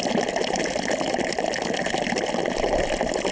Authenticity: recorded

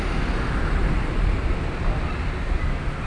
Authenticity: recorded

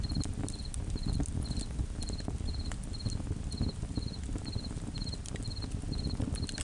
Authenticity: recorded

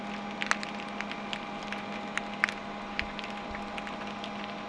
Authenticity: recorded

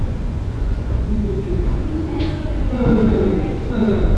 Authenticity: remade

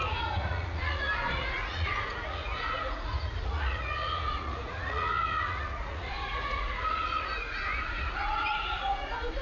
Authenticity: remade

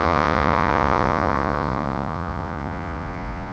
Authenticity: remade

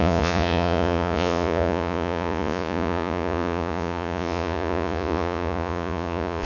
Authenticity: remade